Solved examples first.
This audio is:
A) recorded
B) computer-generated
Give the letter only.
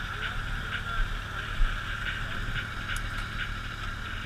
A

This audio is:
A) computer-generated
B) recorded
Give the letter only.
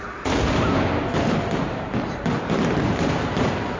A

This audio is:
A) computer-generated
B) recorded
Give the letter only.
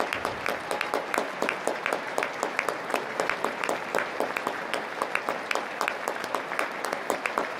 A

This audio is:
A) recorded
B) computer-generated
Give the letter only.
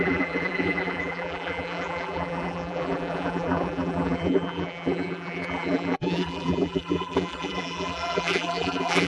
B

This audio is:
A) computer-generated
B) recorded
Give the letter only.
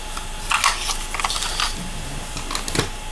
B